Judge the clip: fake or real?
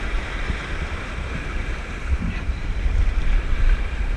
fake